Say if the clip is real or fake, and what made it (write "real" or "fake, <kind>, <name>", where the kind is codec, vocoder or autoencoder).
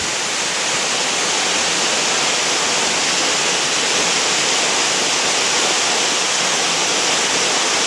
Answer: real